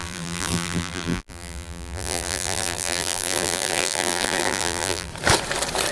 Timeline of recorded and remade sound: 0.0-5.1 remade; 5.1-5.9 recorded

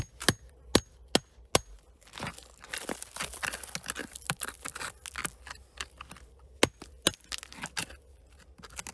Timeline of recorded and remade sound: 0.0-4.0 recorded; 4.0-4.6 remade; 4.6-8.9 recorded

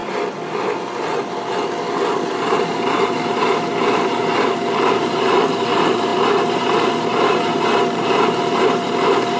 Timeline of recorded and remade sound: 0.0-2.3 recorded; 2.3-9.4 remade